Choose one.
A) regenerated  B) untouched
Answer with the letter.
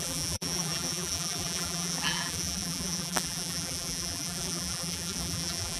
A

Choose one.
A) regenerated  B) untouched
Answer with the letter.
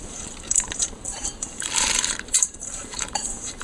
A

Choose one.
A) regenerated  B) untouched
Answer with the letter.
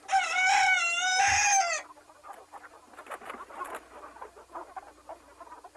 B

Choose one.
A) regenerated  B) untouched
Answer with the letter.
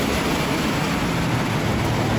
B